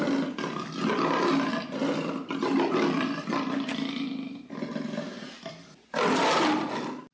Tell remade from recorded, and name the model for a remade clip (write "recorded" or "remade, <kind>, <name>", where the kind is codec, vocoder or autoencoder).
recorded